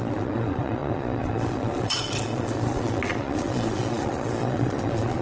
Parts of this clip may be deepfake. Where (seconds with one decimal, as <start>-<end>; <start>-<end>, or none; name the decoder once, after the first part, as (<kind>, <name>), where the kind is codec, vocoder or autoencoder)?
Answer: 0.0-5.2 (vocoder, Vocos)